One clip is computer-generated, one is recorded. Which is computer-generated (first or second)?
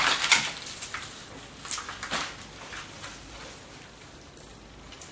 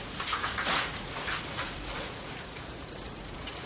second